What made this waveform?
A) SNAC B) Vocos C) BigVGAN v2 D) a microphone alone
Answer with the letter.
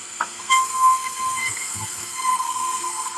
A